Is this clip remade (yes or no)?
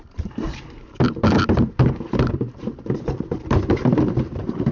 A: yes